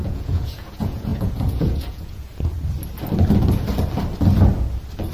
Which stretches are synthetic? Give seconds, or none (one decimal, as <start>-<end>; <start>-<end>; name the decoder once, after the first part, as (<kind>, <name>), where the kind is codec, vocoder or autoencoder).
0.0-2.3 (vocoder, Vocos)